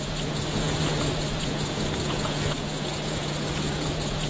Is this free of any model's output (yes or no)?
no